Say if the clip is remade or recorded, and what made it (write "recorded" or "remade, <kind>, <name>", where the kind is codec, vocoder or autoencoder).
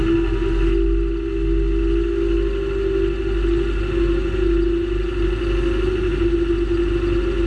recorded